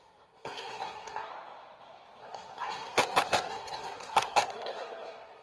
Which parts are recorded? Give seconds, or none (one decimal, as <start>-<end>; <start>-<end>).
1.3-2.2